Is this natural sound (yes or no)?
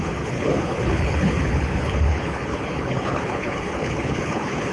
no